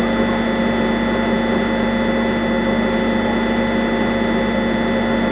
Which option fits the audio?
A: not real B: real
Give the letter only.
B